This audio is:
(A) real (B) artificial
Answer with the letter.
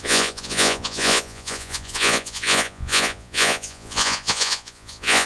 B